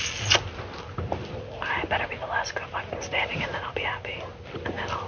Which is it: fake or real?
real